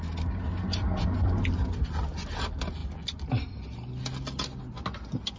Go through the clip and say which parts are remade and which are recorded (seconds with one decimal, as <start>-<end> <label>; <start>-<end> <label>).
0.0-5.4 recorded